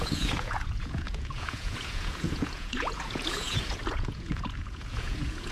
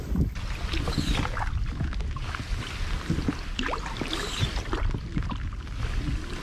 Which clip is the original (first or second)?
second